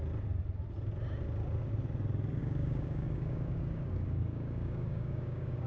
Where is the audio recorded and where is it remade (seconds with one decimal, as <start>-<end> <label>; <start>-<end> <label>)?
0.0-2.4 recorded; 2.4-5.7 remade